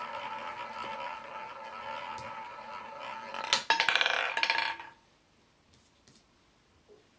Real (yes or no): yes